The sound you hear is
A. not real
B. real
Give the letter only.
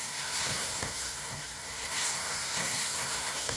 A